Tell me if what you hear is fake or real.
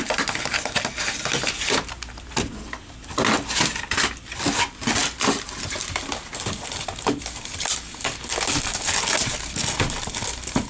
real